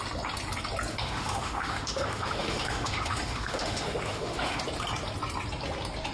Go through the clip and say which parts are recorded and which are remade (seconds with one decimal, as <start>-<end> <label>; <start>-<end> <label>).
0.0-0.9 recorded; 0.9-4.6 remade; 4.6-6.1 recorded